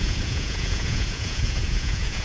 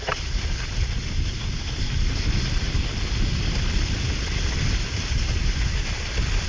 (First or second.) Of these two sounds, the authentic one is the second